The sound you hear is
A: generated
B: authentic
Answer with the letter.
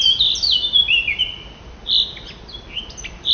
B